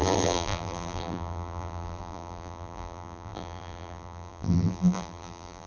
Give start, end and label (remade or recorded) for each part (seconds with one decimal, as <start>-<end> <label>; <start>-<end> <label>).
0.0-5.7 remade